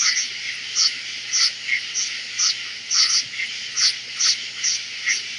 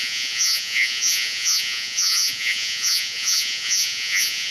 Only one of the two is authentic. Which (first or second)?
first